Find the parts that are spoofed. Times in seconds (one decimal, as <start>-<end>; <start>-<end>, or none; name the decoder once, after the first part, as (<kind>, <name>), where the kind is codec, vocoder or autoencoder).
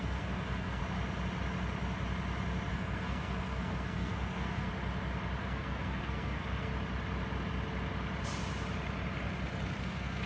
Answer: 0.0-0.8 (codec, SNAC); 2.7-4.7; 5.4-6.7; 9.8-10.3